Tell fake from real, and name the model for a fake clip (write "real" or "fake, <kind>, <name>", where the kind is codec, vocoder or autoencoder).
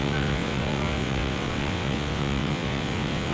fake, vocoder, WaveNeXt